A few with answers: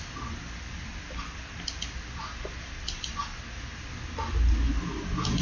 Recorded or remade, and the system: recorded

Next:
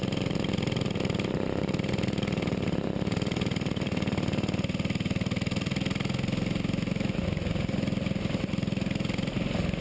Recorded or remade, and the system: recorded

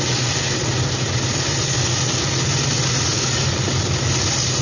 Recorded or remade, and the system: recorded